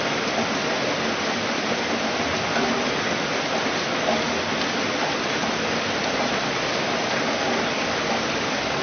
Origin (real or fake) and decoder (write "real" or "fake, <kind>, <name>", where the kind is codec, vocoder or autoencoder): fake, vocoder, BigVGAN v2